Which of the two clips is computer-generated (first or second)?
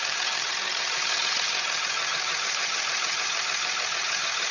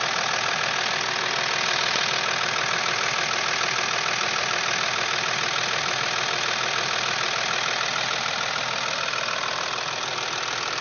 first